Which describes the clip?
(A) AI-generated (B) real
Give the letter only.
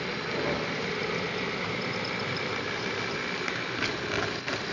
B